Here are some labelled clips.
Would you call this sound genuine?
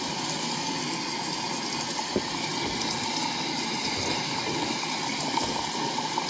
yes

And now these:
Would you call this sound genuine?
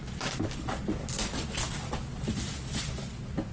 yes